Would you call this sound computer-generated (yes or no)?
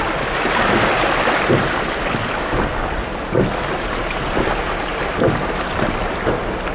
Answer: no